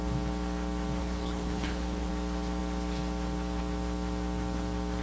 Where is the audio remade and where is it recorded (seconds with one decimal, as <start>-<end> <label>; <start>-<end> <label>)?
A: 0.0-1.0 recorded; 1.0-2.1 remade; 2.1-5.0 recorded